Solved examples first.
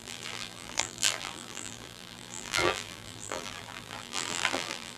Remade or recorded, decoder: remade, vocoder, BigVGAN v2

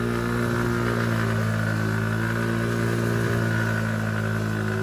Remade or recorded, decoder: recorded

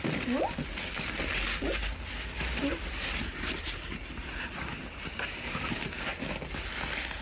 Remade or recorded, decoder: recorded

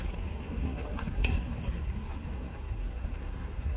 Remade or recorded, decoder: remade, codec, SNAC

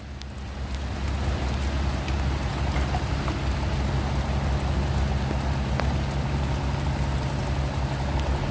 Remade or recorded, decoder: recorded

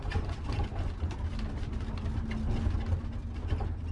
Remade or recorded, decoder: recorded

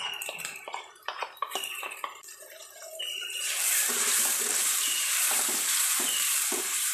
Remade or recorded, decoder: remade, vocoder, BigVGAN v2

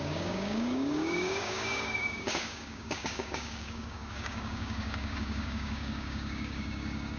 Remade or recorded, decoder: remade, codec, DAC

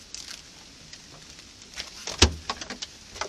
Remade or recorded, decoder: recorded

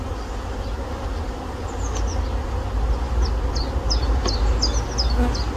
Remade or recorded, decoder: recorded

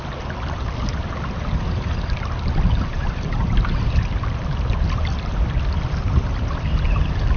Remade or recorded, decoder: recorded